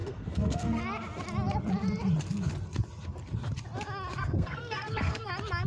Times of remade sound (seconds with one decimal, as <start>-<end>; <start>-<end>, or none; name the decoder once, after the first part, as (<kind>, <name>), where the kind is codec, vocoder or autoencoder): 0.0-0.8 (codec, SNAC); 4.2-5.3